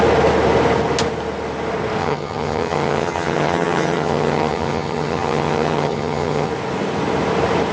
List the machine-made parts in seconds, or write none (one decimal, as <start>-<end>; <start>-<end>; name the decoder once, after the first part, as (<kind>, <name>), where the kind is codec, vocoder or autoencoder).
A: 2.0-6.5 (vocoder, HiFi-GAN)